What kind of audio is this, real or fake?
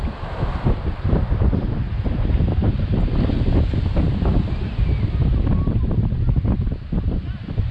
real